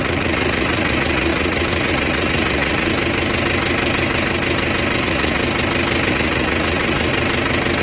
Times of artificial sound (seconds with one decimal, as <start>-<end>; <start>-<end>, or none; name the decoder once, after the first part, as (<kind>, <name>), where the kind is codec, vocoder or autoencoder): 0.0-2.9 (vocoder, Vocos); 5.0-5.4; 6.1-7.1